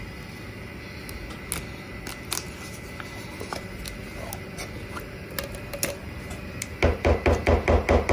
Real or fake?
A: real